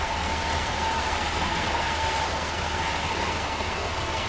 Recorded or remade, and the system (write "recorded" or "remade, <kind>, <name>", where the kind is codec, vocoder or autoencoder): remade, codec, SNAC